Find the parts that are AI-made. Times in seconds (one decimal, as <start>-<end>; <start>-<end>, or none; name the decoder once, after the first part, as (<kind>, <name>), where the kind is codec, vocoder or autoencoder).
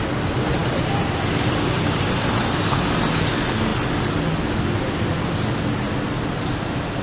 none